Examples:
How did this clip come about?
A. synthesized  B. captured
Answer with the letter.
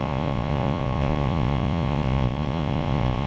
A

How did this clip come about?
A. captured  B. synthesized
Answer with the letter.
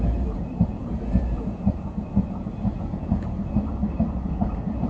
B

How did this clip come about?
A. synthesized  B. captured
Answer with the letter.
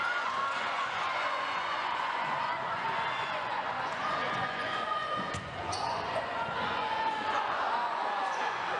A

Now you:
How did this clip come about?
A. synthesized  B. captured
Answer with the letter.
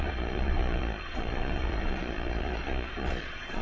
A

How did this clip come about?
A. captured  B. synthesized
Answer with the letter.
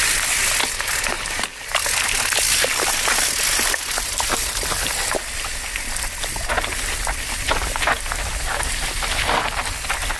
A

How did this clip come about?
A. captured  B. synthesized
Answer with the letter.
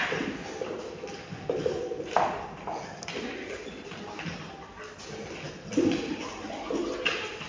A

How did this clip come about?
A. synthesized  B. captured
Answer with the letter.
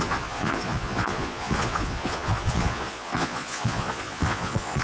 A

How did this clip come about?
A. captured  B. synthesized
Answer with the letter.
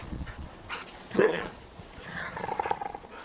B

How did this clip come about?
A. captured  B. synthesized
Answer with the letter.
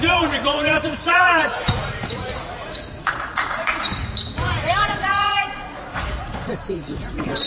B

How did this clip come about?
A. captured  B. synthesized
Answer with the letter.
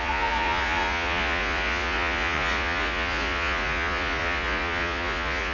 B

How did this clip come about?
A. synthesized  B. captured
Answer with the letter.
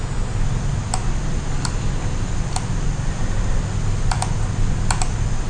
B